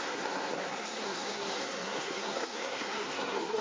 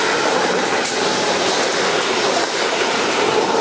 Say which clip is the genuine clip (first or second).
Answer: second